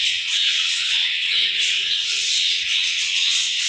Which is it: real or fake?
fake